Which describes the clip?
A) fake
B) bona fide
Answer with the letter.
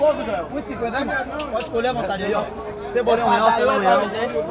B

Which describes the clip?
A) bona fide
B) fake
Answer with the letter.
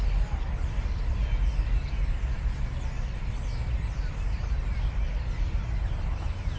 A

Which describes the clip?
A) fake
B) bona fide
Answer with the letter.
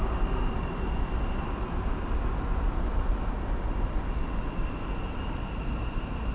B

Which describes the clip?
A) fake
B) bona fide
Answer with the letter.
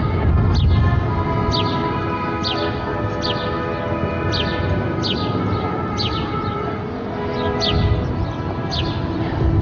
B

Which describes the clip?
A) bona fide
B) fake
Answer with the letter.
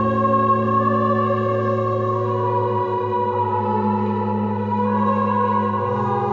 A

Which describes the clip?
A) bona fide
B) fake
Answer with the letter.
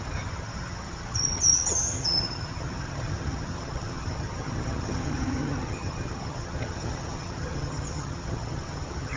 B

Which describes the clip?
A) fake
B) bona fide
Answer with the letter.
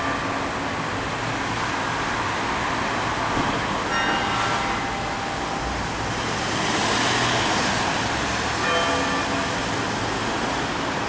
B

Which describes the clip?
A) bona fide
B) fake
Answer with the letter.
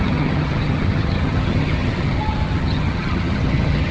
B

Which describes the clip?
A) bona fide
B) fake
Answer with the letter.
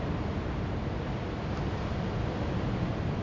A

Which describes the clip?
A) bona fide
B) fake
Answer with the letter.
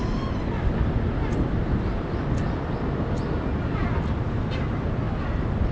A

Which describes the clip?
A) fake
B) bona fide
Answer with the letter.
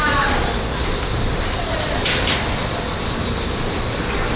B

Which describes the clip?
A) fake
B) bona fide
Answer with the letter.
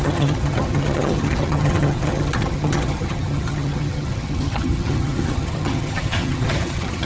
A